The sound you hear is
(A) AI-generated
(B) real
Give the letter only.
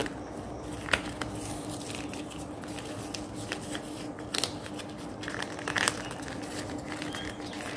B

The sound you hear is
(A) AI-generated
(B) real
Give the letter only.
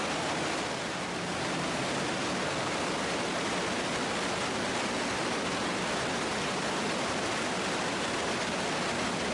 B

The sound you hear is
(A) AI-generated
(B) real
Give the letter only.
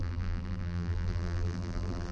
A